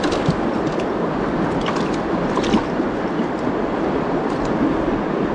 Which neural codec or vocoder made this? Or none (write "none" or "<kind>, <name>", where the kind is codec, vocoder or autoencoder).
none